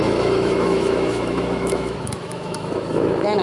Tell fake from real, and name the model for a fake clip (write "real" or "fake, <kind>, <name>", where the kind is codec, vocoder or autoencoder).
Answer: fake, autoencoder, DAC-VAE